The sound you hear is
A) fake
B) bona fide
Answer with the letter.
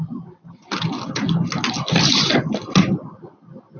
B